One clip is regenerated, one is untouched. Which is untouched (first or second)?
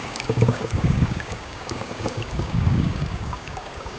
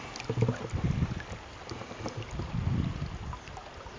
second